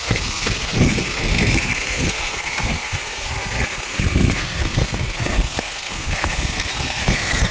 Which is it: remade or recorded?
remade